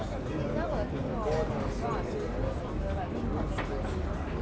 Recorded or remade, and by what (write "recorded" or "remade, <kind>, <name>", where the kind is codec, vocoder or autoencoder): recorded